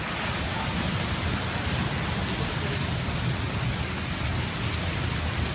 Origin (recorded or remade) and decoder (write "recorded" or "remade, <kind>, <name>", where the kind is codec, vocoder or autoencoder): recorded